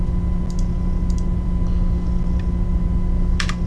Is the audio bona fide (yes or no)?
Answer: yes